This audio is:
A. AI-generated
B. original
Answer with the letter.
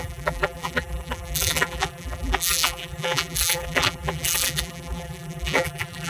A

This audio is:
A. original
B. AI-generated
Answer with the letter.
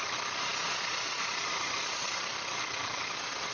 A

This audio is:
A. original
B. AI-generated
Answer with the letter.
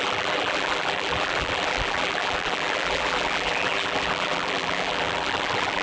B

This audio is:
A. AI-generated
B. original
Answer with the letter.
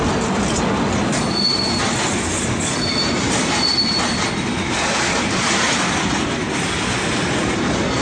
B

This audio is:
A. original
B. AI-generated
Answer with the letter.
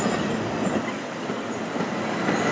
A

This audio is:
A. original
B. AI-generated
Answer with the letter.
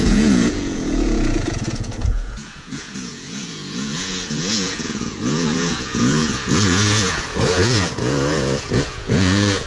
B